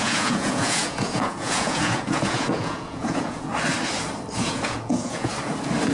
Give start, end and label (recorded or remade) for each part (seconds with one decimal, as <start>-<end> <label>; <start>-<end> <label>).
0.0-3.5 remade; 3.5-4.4 recorded; 4.4-5.3 remade; 5.3-5.9 recorded